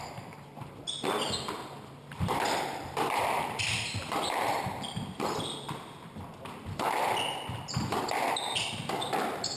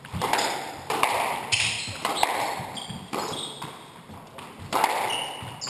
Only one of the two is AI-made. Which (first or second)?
first